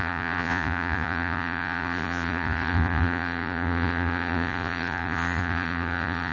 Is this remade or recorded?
remade